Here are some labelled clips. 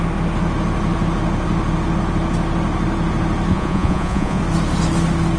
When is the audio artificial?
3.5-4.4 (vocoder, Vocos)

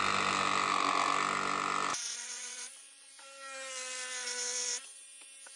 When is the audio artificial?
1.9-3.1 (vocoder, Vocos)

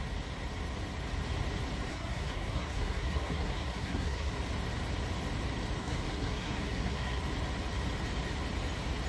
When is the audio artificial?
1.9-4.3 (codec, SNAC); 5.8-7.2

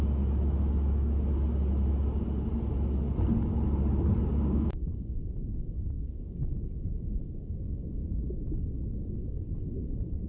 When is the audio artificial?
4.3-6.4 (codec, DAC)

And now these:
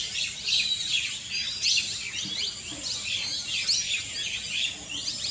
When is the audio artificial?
none

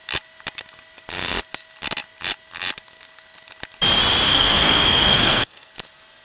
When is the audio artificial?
4.3-5.7 (codec, SNAC)

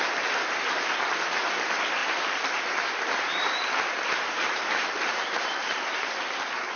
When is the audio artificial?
2.0-6.1 (vocoder, BigVGAN v2)

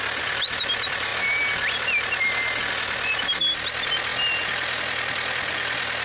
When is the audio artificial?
0.0-1.1 (vocoder, BigVGAN v2); 2.7-4.1; 4.8-6.0